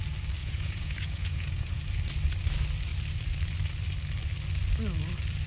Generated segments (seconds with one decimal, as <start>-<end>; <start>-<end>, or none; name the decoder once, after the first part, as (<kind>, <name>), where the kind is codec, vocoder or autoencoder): 0.4-1.8 (vocoder, Vocos)